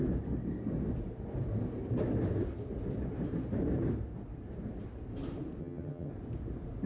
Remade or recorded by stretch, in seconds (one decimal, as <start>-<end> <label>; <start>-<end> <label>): 0.0-5.6 recorded; 5.6-6.1 remade; 6.1-6.9 recorded

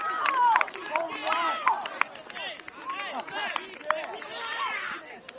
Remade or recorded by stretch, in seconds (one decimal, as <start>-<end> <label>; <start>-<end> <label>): 0.0-1.2 remade; 1.2-4.4 recorded; 4.4-5.4 remade

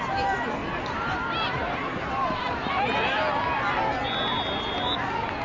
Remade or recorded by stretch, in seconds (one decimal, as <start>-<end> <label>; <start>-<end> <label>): 0.0-0.6 recorded; 0.6-2.7 remade; 2.7-5.4 recorded

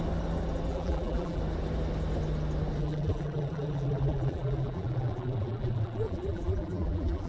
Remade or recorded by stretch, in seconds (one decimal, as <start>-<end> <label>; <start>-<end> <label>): 0.0-0.7 recorded; 0.7-1.4 remade; 1.4-2.8 recorded; 2.8-7.3 remade

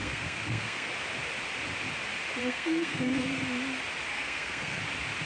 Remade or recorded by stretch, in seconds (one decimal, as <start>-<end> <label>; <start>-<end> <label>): 0.0-0.9 remade; 0.9-2.4 recorded; 2.4-3.4 remade; 3.4-4.1 recorded; 4.1-4.8 remade; 4.8-5.3 recorded

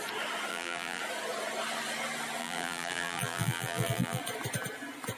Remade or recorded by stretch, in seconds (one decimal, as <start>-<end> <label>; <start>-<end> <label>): 0.0-0.5 recorded; 0.5-1.0 remade; 1.0-2.4 recorded; 2.4-4.2 remade; 4.2-5.2 recorded

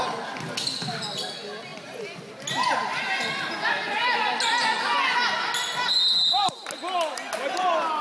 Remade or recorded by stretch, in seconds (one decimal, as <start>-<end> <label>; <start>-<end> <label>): 0.0-8.0 recorded

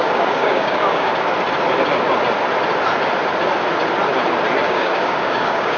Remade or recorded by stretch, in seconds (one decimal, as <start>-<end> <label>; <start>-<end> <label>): 0.0-1.1 remade; 1.1-4.6 recorded; 4.6-5.8 remade